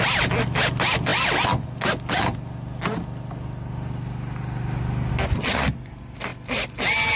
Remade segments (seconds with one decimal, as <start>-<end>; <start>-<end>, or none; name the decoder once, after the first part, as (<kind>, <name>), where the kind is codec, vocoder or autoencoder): none